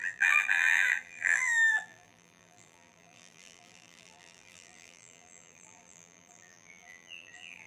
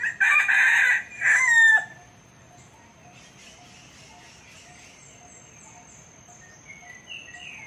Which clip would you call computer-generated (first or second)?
first